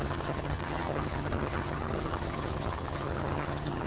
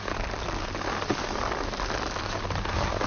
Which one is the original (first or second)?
second